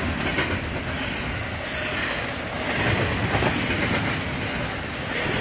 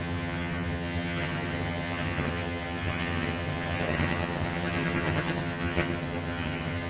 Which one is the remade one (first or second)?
second